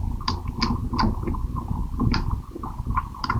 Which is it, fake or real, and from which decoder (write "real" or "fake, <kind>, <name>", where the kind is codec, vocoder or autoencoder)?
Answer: fake, vocoder, BigVGAN v2